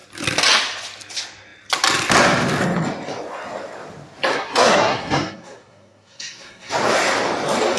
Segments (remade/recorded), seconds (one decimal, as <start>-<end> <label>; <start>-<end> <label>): 0.0-4.3 recorded; 4.3-6.7 remade; 6.7-7.8 recorded